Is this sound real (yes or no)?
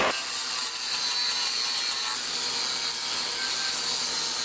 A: yes